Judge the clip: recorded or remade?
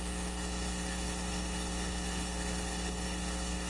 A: remade